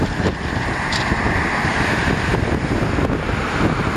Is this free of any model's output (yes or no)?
no